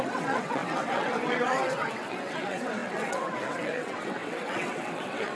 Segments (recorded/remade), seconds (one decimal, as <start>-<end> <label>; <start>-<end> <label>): 0.0-5.3 remade

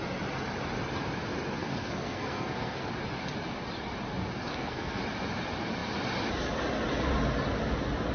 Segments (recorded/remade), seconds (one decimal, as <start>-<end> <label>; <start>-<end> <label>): 0.0-1.6 recorded; 1.6-2.9 remade; 2.9-4.5 recorded; 4.5-5.0 remade; 5.0-8.1 recorded

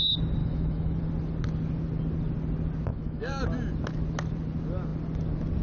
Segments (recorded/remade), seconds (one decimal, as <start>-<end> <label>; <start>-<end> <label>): 0.0-0.4 recorded; 0.4-1.0 remade; 1.0-2.9 recorded; 2.9-3.4 remade; 3.4-5.6 recorded

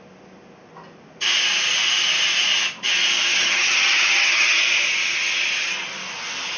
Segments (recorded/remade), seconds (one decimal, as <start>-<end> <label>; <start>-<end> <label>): 0.0-3.3 recorded; 3.3-4.6 remade; 4.6-6.6 recorded

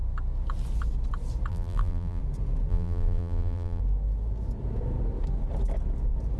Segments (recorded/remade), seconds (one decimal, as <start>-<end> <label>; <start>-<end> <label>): 0.0-1.5 recorded; 1.5-2.2 remade; 2.2-2.7 recorded; 2.7-3.8 remade; 3.8-6.4 recorded

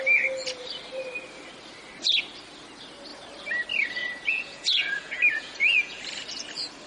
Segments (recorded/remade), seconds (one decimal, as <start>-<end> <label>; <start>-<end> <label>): 0.0-4.0 recorded; 4.0-6.0 remade; 6.0-6.9 recorded

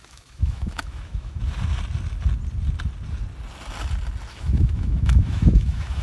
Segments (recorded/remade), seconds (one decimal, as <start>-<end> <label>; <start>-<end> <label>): 0.0-1.4 remade; 1.4-4.3 recorded; 4.3-6.0 remade

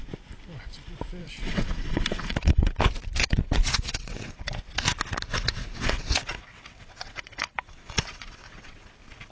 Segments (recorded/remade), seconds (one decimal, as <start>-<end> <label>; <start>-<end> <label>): 0.0-1.2 recorded; 1.2-2.8 remade; 2.8-3.2 recorded; 3.2-4.6 remade; 4.6-5.3 recorded; 5.3-8.8 remade; 8.8-9.3 recorded